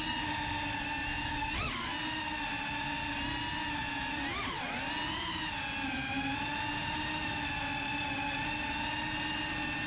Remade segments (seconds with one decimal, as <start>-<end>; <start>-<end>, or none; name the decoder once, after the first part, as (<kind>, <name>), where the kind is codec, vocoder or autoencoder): none